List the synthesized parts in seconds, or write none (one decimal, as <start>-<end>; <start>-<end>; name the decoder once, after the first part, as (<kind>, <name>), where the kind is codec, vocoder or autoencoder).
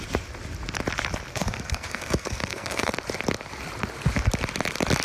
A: 1.3-2.9 (codec, SNAC)